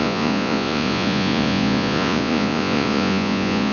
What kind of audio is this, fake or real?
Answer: fake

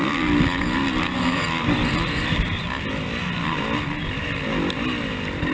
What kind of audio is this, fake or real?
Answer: real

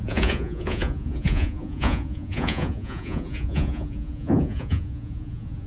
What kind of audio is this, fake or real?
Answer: fake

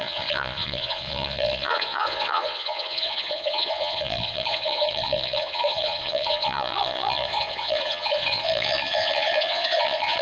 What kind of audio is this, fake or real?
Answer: fake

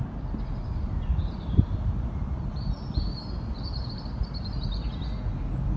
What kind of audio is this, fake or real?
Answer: real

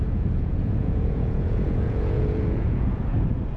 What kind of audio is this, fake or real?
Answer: fake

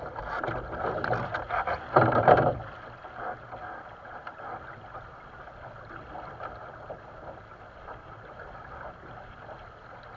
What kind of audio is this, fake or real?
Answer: real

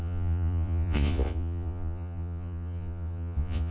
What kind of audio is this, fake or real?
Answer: fake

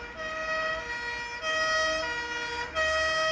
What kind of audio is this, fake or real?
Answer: real